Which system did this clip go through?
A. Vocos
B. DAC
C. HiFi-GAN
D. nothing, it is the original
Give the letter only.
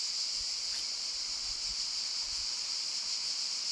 D